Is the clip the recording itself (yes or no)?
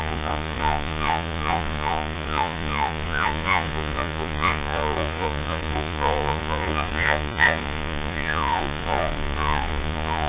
no